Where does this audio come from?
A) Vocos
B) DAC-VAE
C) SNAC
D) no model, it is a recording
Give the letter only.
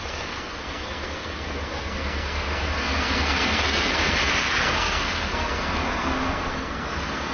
C